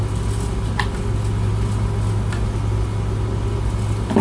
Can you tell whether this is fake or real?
real